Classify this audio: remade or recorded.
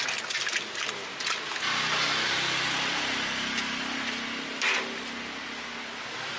recorded